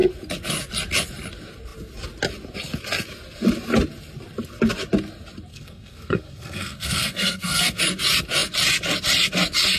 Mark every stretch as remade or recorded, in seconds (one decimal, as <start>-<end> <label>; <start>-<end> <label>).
0.0-5.5 recorded; 5.5-7.8 remade; 7.8-9.8 recorded